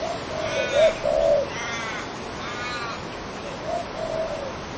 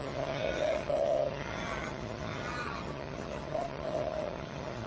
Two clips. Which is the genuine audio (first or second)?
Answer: first